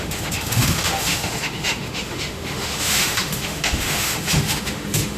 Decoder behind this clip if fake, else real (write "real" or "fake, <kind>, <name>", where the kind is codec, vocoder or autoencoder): fake, autoencoder, DAC-VAE